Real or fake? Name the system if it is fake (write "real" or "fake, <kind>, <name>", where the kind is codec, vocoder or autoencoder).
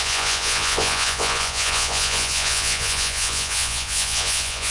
fake, vocoder, Vocos